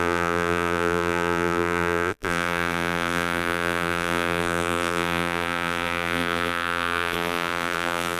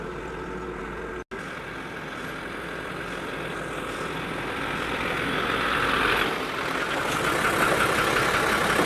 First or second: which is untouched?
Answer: second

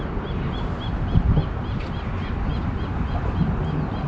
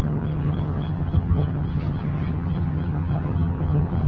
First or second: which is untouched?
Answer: first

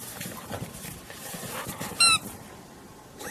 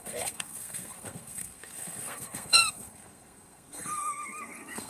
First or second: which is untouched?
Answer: first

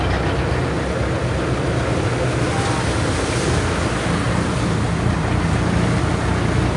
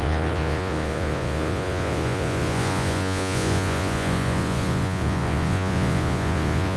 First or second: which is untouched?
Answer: first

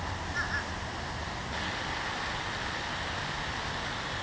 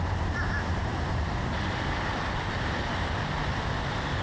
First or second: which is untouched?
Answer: first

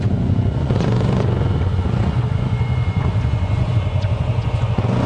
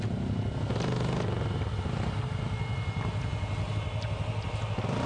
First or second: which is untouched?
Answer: second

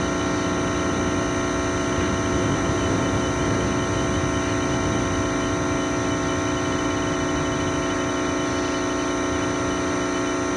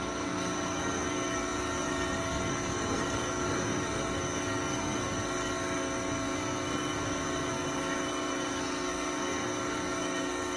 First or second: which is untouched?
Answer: first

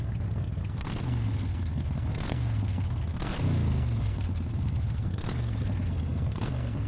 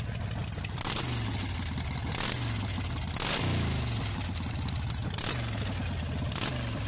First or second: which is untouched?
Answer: second